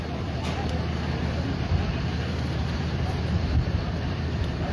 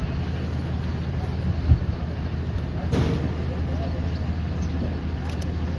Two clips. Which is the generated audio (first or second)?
first